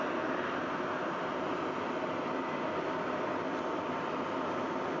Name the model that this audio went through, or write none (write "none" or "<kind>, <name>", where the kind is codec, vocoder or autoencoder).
none